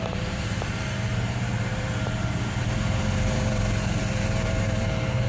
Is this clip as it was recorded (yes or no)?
no